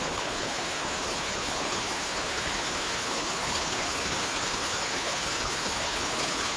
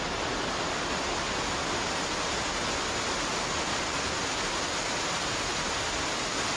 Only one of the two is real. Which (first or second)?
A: second